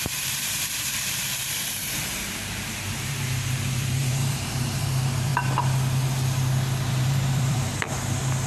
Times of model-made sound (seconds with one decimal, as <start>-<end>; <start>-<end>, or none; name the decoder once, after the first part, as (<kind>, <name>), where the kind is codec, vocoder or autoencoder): 0.0-5.3 (vocoder, BigVGAN v2); 6.9-7.7